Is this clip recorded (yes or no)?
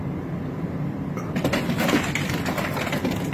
yes